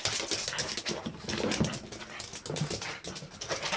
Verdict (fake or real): real